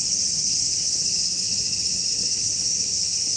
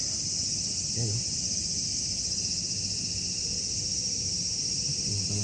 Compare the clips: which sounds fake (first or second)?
first